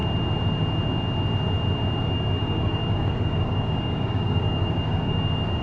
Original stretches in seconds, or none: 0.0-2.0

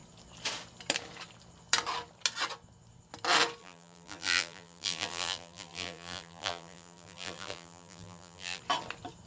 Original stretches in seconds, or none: 0.0-3.6; 8.6-9.3